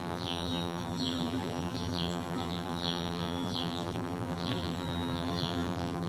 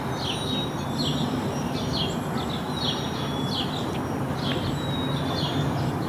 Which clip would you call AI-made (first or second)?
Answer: first